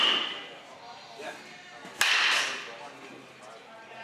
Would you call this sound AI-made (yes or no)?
no